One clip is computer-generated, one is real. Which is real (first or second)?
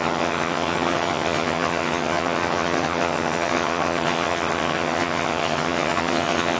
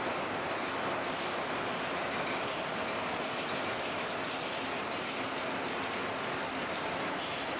second